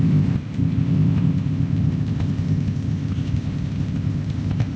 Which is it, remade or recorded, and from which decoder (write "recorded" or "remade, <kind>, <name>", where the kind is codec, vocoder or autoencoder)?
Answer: remade, codec, ZipCodec